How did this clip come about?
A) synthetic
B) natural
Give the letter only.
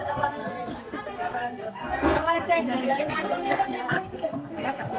A